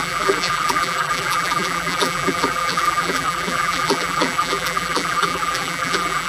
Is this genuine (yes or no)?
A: no